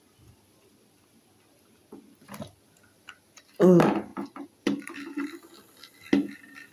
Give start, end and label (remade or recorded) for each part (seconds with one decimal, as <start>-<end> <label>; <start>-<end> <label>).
0.0-6.7 recorded